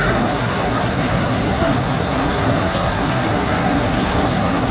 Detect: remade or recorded remade